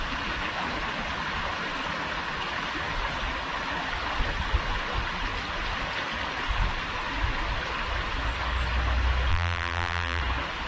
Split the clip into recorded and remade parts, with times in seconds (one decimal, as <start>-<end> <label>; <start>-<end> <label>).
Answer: 0.0-9.3 recorded; 9.3-10.2 remade; 10.2-10.7 recorded